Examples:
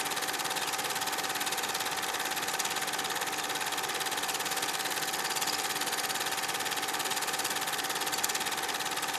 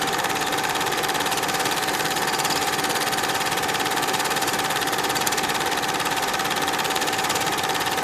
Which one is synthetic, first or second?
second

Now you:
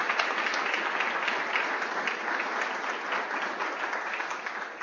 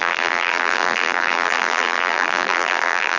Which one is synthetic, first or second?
second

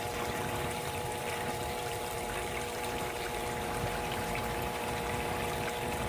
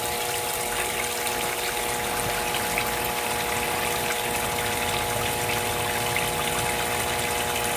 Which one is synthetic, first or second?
first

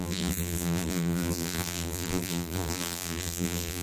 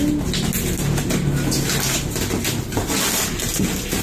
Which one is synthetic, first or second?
first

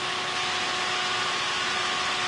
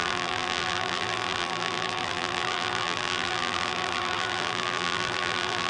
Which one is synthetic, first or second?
second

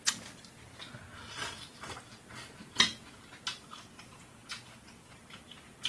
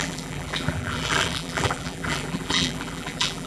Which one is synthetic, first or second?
second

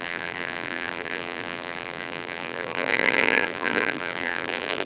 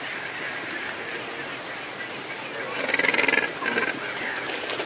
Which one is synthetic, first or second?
first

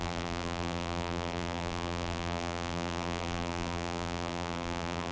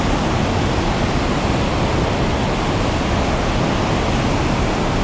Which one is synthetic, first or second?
first